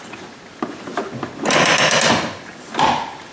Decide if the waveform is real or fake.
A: real